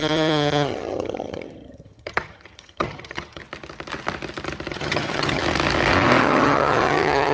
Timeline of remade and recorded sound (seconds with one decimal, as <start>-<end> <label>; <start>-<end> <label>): 0.0-3.4 remade; 3.4-4.7 recorded; 4.7-5.4 remade; 5.4-6.2 recorded; 6.2-7.3 remade